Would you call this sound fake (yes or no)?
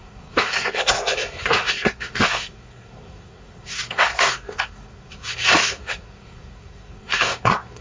yes